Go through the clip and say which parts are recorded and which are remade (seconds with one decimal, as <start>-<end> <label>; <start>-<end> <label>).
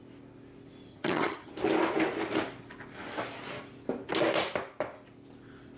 0.0-0.9 recorded; 0.9-1.5 remade; 1.5-5.8 recorded